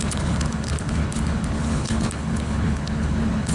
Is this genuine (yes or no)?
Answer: no